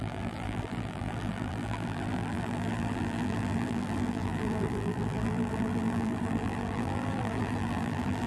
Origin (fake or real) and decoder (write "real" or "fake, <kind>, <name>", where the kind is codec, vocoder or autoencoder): fake, vocoder, BigVGAN v2